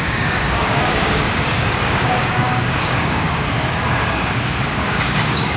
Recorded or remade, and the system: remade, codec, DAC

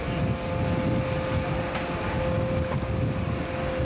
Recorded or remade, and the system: recorded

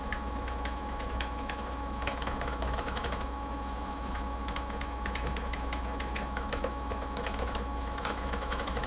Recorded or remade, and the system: remade, autoencoder, DAC-VAE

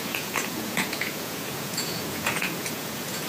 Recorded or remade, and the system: remade, vocoder, Vocos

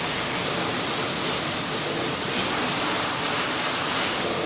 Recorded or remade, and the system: recorded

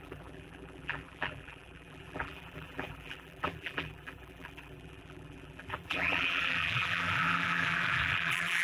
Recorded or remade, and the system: remade, vocoder, BigVGAN v2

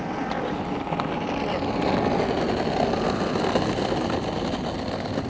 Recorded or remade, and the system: recorded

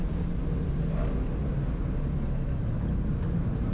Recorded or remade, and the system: recorded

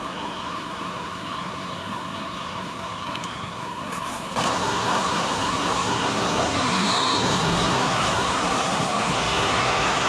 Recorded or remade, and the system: remade, codec, SNAC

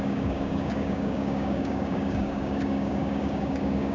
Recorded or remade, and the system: remade, codec, DAC